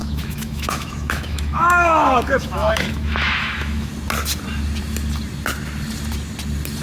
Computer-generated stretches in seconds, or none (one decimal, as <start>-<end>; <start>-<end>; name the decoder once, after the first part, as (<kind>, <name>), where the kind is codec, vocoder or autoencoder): 0.0-3.9 (autoencoder, DAC-VAE)